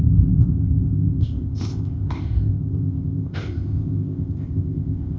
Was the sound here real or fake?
fake